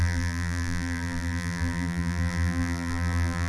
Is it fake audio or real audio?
fake